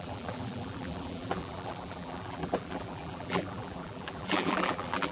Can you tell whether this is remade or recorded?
remade